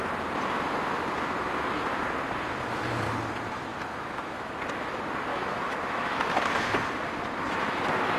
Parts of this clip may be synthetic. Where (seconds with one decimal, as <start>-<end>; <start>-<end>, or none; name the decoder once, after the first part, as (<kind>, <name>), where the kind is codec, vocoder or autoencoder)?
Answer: 3.7-4.6 (autoencoder, DAC-VAE); 5.3-6.3